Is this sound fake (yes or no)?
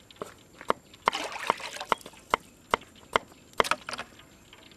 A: no